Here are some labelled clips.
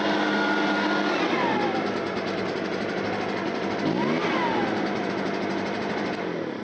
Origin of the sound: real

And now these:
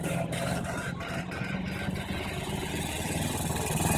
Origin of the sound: fake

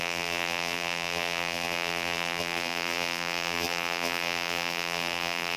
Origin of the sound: fake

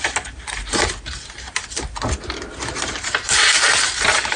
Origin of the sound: real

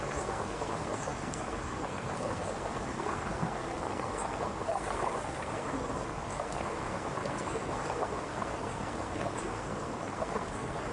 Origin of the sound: fake